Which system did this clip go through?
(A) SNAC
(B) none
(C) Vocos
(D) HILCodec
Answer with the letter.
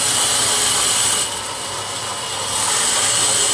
B